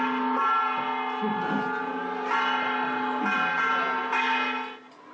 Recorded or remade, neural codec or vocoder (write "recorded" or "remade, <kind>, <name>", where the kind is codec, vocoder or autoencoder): recorded